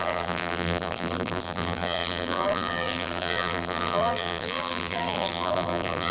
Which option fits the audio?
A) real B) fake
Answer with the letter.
B